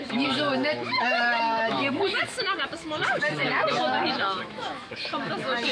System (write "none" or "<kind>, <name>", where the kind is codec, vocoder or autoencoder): autoencoder, DAC-VAE